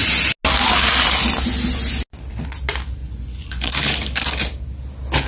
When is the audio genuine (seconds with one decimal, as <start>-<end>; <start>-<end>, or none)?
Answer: 0.0-3.0; 3.7-5.3